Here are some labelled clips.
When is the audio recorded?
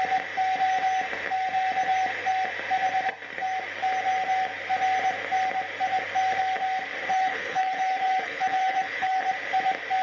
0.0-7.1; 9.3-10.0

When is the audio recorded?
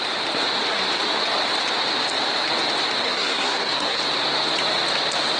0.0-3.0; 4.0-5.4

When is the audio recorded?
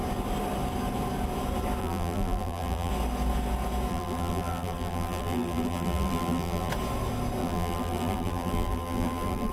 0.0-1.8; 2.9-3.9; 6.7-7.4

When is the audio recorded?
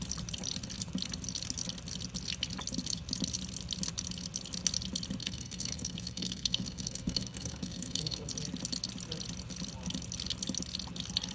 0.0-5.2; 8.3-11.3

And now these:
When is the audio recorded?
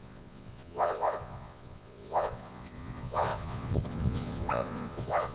none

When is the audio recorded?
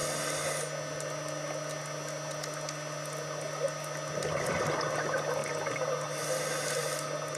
0.0-7.4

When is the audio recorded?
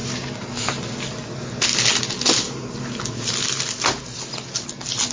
0.0-5.1